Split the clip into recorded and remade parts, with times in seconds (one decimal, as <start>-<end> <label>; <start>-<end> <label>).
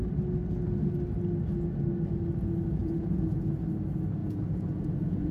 0.0-2.8 recorded; 2.8-3.6 remade; 3.6-4.2 recorded; 4.2-5.3 remade